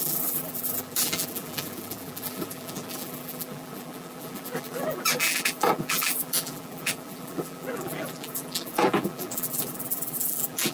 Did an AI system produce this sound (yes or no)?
yes